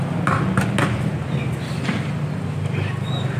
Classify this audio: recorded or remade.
recorded